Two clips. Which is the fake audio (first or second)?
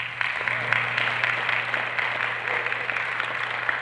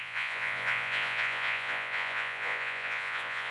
second